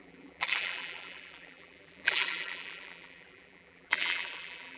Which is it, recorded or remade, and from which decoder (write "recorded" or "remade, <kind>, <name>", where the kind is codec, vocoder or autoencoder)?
remade, vocoder, BigVGAN v2